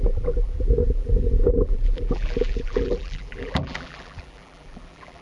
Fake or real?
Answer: fake